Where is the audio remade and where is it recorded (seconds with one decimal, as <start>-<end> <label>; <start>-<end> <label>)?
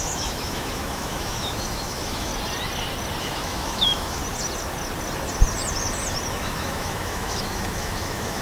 0.0-2.3 remade; 2.3-3.2 recorded; 3.2-4.2 remade; 4.2-6.3 recorded; 6.3-8.4 remade